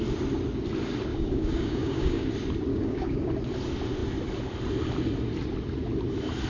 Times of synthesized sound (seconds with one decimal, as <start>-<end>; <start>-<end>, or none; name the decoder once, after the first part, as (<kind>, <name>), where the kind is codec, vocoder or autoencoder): 1.1-2.3 (codec, DAC); 2.7-3.3